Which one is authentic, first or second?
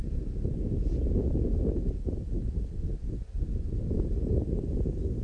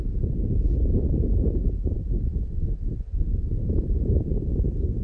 first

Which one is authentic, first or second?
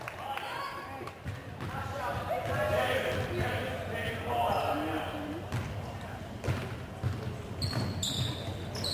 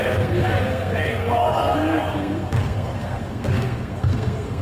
first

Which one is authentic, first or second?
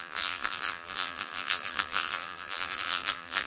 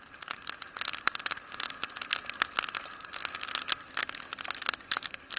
second